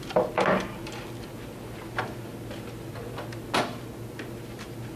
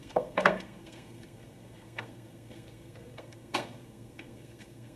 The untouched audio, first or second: first